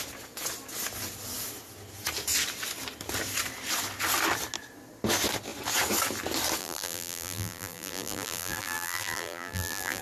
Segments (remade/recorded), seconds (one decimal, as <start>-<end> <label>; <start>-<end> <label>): 0.0-6.6 recorded; 6.6-10.0 remade